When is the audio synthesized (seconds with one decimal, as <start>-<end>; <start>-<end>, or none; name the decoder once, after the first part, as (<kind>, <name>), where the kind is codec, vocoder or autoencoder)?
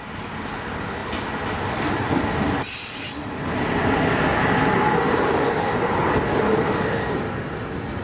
none